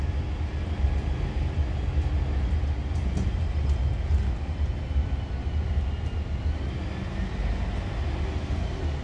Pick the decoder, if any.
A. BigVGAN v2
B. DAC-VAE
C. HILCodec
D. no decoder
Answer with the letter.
D